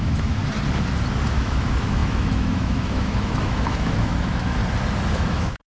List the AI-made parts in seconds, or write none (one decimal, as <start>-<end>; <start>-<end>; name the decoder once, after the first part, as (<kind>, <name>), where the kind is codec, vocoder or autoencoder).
0.0-0.4 (autoencoder, DAC-VAE); 1.3-4.6; 5.1-5.7